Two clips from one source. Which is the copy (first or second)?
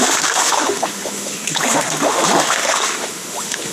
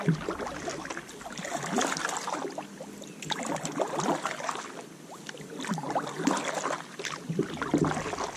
first